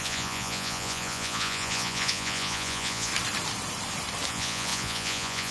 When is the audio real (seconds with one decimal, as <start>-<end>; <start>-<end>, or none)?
3.1-4.3